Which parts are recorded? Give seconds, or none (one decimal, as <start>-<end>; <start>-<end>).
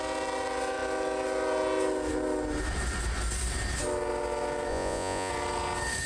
0.0-4.7; 5.3-6.1